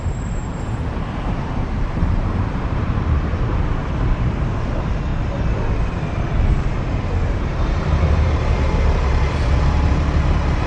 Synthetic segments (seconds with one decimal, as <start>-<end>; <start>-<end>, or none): 0.0-5.1; 6.4-10.7